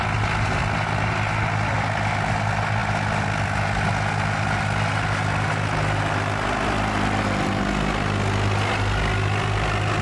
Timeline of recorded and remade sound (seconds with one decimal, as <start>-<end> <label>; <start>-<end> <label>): 0.0-10.0 recorded